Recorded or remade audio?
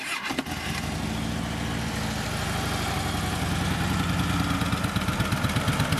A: recorded